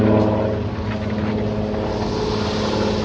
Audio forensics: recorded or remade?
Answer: recorded